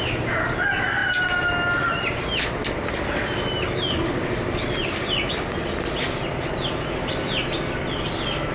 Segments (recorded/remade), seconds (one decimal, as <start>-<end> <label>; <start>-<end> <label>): 0.0-8.5 recorded